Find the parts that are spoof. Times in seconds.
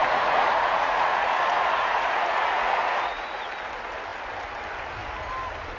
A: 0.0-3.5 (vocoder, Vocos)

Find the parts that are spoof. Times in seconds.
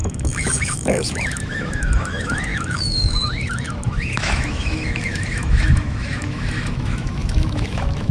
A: 0.0-8.1 (autoencoder, DAC-VAE)